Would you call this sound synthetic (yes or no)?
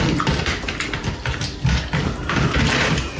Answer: no